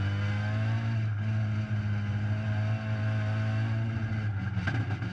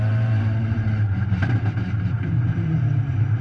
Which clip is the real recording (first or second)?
first